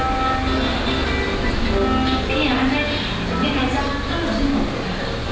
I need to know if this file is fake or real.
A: real